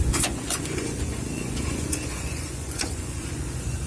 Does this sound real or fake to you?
fake